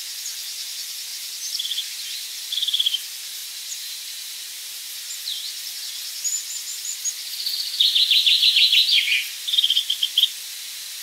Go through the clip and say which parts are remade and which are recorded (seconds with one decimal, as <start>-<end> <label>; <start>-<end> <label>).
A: 0.0-3.4 recorded; 3.4-4.6 remade; 4.6-11.0 recorded

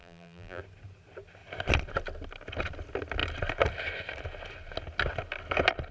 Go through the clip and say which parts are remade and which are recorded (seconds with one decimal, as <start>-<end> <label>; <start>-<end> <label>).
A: 0.0-0.6 remade; 0.6-5.9 recorded

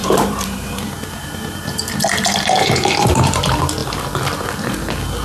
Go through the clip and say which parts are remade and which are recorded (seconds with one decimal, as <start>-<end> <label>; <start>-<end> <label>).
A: 0.0-0.7 remade; 0.7-1.2 recorded; 1.2-1.8 remade; 1.8-2.3 recorded; 2.3-3.4 remade; 3.4-5.2 recorded

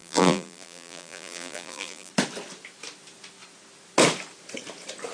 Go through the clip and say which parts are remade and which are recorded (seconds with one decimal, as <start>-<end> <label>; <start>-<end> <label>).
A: 0.0-2.1 remade; 2.1-5.1 recorded

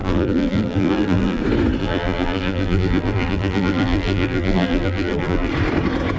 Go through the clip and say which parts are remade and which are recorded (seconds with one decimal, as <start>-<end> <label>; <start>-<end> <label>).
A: 0.0-1.4 remade; 1.4-1.8 recorded; 1.8-5.5 remade; 5.5-6.2 recorded